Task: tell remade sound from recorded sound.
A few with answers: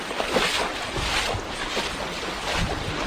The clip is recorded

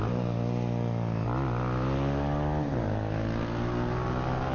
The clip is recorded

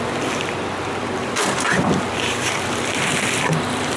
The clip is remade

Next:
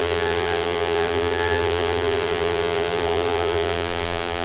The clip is remade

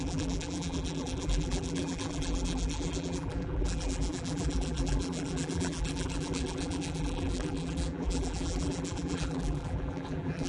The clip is remade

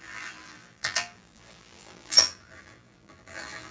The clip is remade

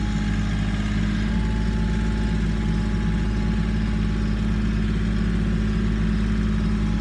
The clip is recorded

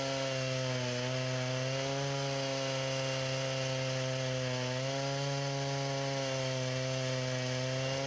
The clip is recorded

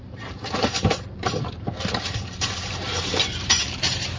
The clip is remade